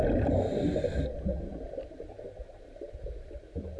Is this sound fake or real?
real